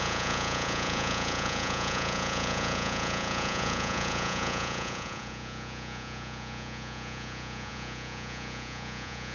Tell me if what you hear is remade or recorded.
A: remade